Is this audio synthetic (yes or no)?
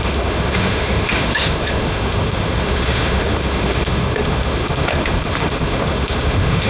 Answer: yes